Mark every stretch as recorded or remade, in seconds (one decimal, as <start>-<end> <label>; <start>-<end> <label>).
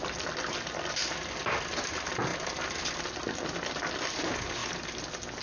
0.0-5.4 recorded